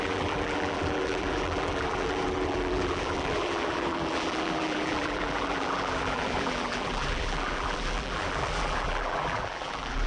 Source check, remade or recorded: remade